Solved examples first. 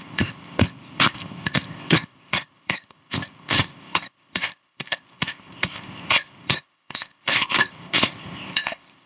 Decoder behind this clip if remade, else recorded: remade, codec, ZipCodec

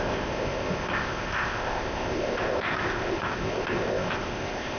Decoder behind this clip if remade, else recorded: remade, codec, ZipCodec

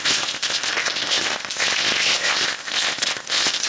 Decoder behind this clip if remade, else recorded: remade, codec, ZipCodec